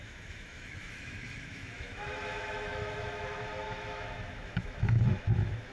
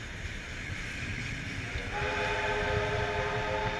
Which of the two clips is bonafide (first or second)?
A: second